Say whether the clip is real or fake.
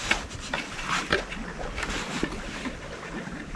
real